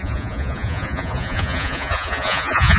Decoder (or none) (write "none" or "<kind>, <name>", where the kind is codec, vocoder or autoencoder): vocoder, Vocos